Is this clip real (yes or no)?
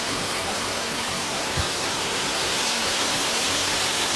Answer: no